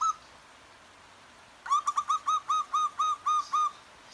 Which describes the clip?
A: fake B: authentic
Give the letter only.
B